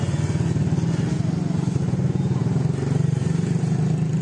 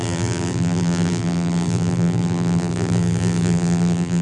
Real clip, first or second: first